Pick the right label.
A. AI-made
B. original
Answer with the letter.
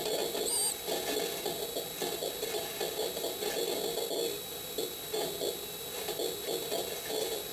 B